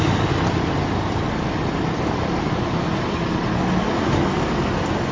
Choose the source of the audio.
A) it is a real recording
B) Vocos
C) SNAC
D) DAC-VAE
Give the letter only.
A